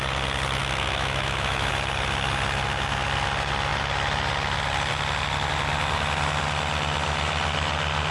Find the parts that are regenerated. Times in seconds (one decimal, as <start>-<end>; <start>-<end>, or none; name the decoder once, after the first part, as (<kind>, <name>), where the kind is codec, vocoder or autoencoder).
0.6-1.7 (autoencoder, DAC-VAE)